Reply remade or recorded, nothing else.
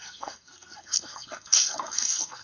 remade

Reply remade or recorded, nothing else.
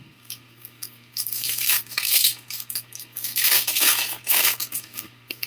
remade